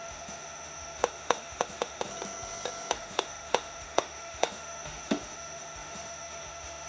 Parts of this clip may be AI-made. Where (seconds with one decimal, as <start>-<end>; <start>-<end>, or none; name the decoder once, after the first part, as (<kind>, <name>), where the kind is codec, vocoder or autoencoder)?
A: 0.0-2.1 (autoencoder, DAC-VAE); 2.9-6.9